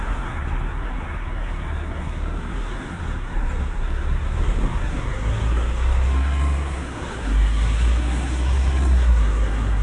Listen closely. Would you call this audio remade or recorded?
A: remade